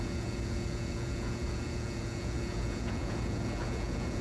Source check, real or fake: fake